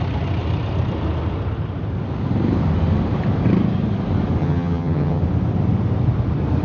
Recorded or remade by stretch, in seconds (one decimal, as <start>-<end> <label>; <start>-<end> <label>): 0.0-4.4 recorded; 4.4-5.2 remade; 5.2-6.6 recorded